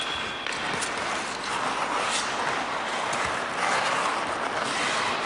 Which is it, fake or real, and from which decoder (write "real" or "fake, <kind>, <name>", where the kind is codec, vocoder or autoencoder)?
real